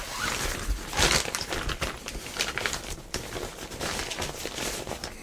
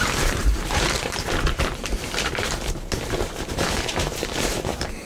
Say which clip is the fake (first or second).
second